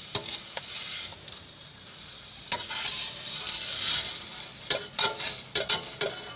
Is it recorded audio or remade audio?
recorded